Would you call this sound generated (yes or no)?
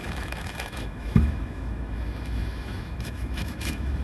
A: yes